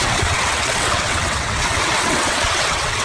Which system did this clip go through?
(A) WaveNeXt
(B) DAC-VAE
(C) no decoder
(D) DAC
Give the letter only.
A